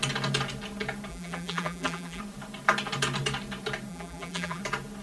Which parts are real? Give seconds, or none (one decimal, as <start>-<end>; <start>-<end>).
0.0-1.1; 2.2-3.9; 4.6-5.0